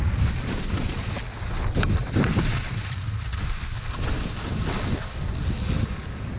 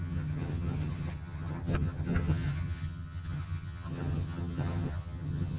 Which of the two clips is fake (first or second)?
second